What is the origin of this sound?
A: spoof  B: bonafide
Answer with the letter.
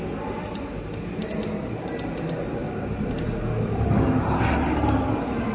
B